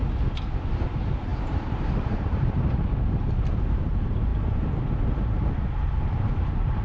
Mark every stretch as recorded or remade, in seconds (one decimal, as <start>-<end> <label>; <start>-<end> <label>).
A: 0.0-0.7 recorded; 0.7-6.8 remade